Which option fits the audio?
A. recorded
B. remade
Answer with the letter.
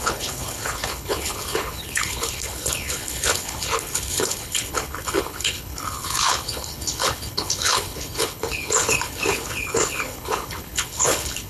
B